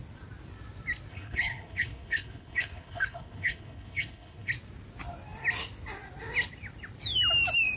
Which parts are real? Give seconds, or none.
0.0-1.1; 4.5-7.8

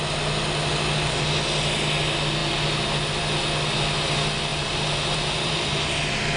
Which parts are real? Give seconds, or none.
0.0-4.5; 5.9-6.4

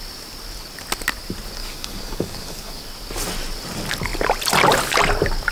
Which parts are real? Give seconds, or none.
0.0-1.6; 2.8-5.5

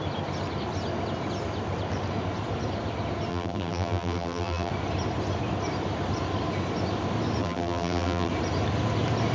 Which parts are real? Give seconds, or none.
0.0-3.3; 4.7-7.4; 8.3-9.3

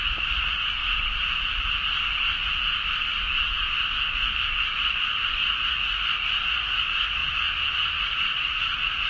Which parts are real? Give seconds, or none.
0.8-4.7; 7.2-8.0

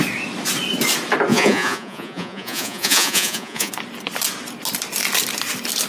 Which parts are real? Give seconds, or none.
0.0-1.3; 3.7-5.9

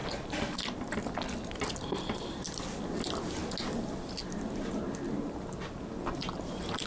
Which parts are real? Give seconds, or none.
0.0-6.9